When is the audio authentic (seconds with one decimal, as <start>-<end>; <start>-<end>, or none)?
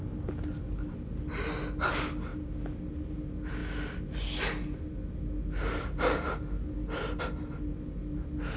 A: 0.0-8.6